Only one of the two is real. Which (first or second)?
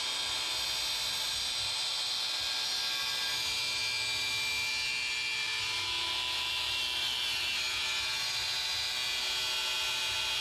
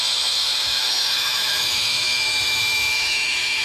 first